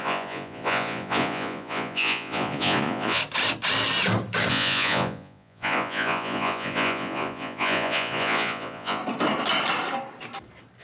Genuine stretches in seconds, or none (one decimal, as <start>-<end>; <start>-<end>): 3.2-4.5; 9.0-10.8

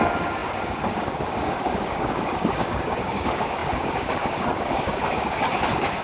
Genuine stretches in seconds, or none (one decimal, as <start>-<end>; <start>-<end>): none

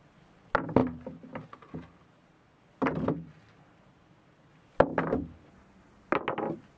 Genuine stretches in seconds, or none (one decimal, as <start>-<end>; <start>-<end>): 0.0-6.8

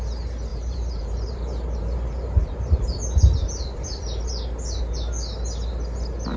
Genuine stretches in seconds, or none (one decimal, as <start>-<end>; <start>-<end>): 0.0-0.5; 4.3-6.4

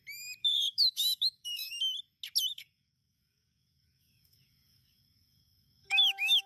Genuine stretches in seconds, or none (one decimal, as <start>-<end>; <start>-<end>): 0.0-0.4; 1.8-2.5